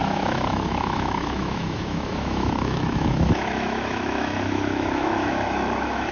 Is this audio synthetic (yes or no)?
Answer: yes